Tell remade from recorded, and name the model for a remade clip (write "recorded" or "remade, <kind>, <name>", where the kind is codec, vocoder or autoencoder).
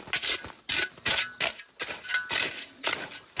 recorded